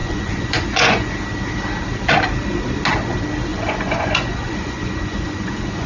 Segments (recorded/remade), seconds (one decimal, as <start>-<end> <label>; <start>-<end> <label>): 0.0-1.1 remade; 1.1-3.5 recorded; 3.5-5.9 remade